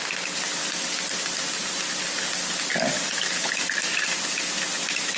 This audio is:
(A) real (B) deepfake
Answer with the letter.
A